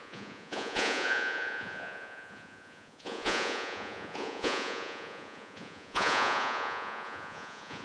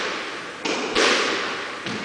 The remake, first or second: first